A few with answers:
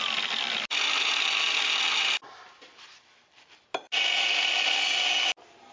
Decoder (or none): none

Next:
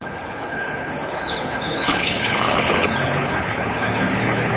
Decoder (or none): codec, HILCodec